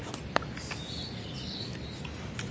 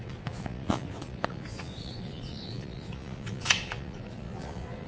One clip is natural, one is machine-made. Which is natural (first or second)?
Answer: first